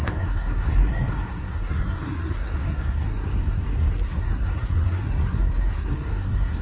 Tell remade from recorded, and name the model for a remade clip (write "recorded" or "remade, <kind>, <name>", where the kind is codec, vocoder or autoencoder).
remade, codec, SNAC